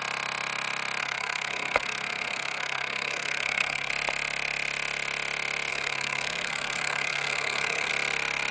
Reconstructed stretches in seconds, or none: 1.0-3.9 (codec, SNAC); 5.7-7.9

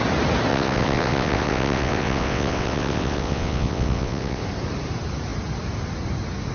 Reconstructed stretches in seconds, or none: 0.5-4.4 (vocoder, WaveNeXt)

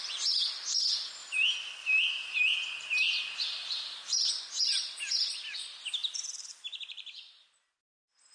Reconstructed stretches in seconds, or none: 1.2-4.3 (vocoder, BigVGAN v2); 6.0-7.6

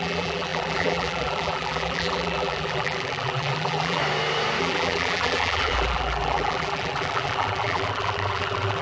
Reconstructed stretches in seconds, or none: 0.0-4.0 (vocoder, BigVGAN v2); 4.6-8.8